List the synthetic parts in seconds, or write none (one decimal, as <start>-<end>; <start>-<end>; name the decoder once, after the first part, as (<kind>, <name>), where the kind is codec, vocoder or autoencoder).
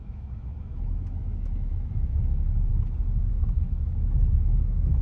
0.0-2.7 (autoencoder, DAC-VAE); 3.3-5.0